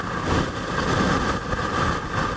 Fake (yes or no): no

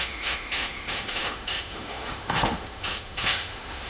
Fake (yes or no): yes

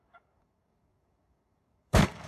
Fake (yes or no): yes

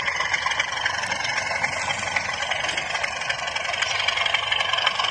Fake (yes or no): no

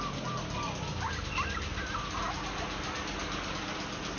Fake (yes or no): no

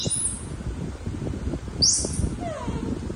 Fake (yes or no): no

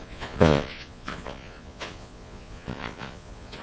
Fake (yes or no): yes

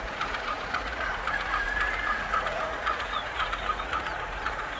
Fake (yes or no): yes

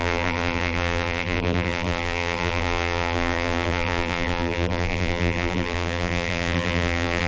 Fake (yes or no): yes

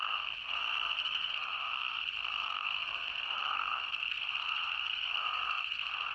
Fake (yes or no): yes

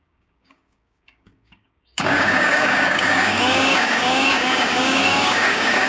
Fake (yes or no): yes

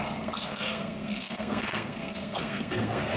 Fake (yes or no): yes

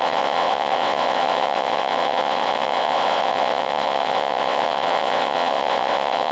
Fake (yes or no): yes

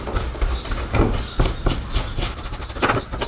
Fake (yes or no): no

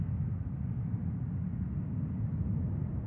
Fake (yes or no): no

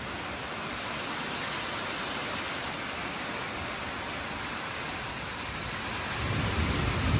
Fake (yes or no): no